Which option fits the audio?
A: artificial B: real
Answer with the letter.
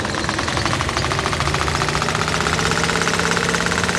B